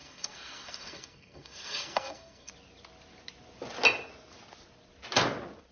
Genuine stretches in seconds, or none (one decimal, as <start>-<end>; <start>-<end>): 2.5-5.7